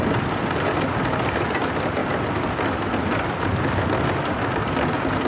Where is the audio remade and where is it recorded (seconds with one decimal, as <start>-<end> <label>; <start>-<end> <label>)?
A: 0.0-5.3 recorded